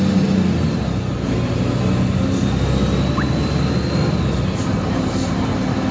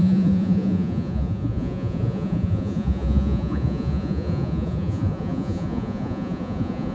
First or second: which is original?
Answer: first